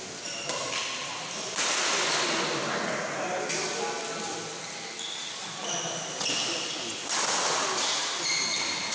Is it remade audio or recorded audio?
recorded